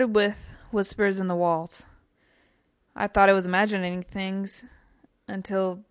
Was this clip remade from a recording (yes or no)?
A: no